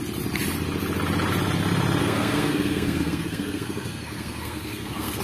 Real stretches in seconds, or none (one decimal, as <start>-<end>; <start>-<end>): 0.0-2.0